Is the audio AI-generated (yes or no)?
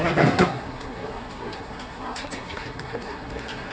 yes